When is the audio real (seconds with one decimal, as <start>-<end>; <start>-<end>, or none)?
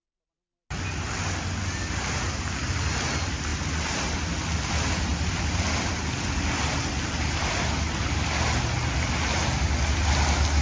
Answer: 0.0-10.6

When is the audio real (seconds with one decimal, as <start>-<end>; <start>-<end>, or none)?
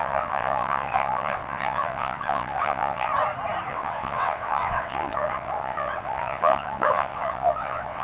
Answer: 3.1-3.7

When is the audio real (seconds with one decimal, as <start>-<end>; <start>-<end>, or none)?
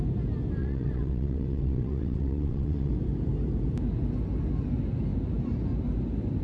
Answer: 0.0-0.6; 2.9-6.4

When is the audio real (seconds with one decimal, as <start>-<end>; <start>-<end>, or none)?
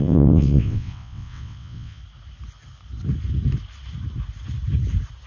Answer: 2.0-5.3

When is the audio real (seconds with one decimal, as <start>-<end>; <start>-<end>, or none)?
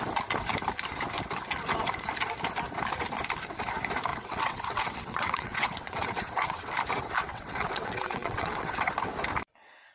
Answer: 0.0-4.1; 6.7-7.3; 8.9-9.9